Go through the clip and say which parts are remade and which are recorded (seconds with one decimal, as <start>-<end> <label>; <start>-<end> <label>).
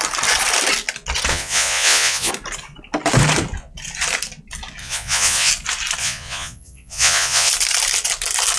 0.0-1.3 recorded; 1.3-2.3 remade; 2.3-4.8 recorded; 4.8-5.5 remade; 5.5-6.0 recorded; 6.0-7.5 remade; 7.5-8.6 recorded